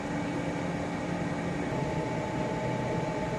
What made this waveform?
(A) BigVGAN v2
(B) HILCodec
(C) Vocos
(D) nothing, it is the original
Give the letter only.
D